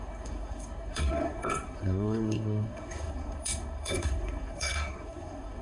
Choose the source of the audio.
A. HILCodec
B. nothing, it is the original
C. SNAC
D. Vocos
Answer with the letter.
C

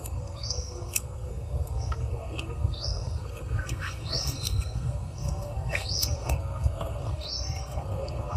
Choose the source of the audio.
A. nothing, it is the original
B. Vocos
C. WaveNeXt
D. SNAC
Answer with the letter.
D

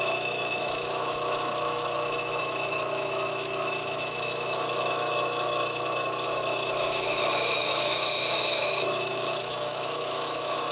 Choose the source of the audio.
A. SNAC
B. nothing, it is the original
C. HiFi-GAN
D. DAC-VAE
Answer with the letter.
D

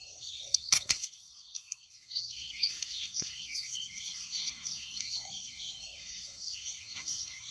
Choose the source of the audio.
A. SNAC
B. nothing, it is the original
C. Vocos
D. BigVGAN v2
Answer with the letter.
A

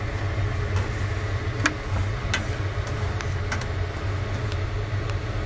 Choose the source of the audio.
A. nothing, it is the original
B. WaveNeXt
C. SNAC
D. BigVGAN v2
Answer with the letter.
A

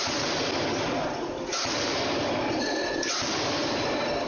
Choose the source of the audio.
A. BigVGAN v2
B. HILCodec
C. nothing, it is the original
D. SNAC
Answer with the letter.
C